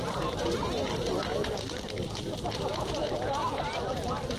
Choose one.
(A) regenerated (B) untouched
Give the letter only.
B